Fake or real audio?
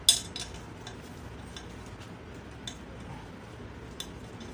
real